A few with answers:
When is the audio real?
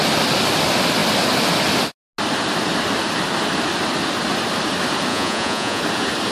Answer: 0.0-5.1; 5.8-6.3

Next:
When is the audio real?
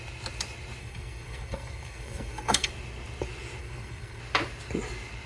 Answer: 0.0-0.8; 2.7-3.6; 4.2-5.3